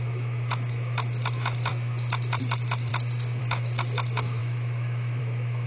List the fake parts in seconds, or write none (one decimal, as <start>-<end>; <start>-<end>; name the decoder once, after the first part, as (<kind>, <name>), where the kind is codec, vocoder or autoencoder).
0.0-1.7 (autoencoder, DAC-VAE); 2.4-2.9; 3.4-5.7